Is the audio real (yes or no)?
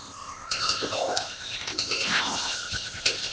no